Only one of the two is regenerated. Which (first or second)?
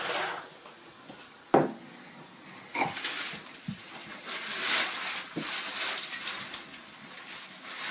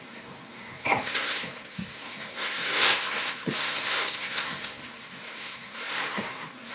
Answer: second